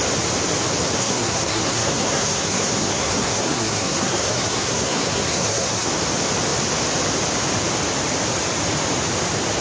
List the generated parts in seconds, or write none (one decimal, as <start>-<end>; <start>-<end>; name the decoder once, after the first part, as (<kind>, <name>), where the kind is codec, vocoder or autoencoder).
1.0-5.9 (codec, SNAC)